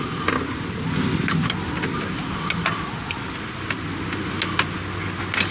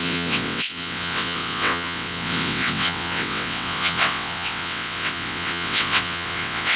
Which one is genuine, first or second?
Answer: first